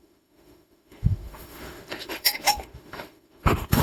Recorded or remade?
remade